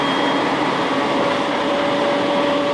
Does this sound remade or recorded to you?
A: recorded